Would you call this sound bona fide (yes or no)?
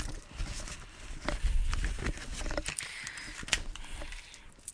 yes